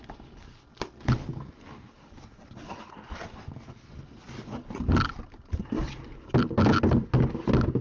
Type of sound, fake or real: real